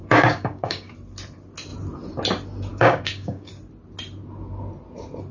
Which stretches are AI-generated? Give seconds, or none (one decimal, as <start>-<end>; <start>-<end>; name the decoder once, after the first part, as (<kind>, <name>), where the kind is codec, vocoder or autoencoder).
0.0-0.9 (codec, DAC); 2.7-3.5